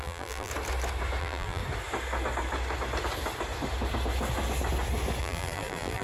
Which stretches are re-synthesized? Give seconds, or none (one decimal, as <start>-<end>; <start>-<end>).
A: 0.0-0.5; 1.2-1.6; 5.2-6.0

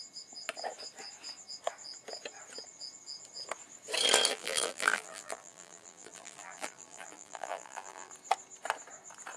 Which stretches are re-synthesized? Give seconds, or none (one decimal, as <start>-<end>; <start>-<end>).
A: 4.3-8.1

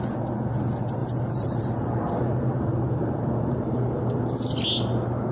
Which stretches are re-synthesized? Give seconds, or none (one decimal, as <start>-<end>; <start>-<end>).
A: 1.0-4.2